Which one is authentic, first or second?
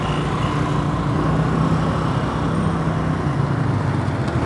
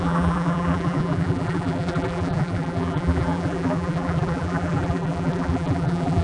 first